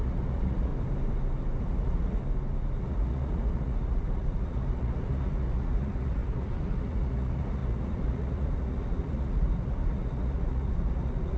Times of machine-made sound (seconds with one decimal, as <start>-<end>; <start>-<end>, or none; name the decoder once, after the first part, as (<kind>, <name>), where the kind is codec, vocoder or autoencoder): 0.0-0.7 (vocoder, Vocos); 1.6-2.2; 2.8-11.4